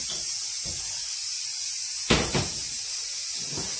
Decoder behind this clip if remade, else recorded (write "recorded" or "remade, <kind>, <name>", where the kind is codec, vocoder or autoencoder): recorded